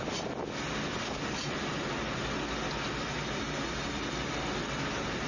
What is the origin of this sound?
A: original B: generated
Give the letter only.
A